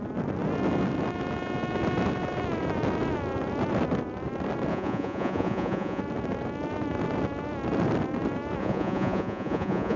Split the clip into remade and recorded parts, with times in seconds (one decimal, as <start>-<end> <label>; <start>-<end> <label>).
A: 0.0-4.7 recorded; 4.7-6.0 remade; 6.0-8.6 recorded; 8.6-10.0 remade